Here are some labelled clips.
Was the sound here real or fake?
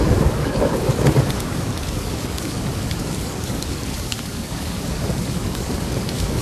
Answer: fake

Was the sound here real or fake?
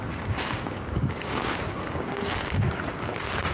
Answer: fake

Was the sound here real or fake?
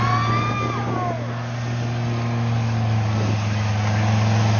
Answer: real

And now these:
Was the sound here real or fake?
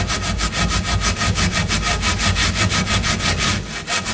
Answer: real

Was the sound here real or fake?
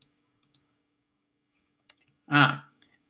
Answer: fake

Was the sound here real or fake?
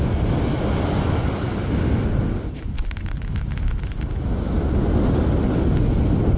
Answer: real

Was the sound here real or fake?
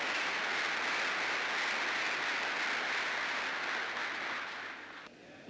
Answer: real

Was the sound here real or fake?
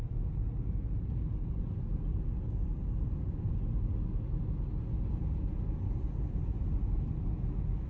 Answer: real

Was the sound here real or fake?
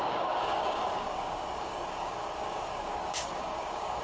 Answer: fake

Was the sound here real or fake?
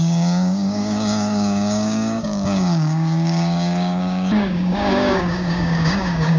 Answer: fake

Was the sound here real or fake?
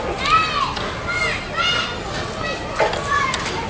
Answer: real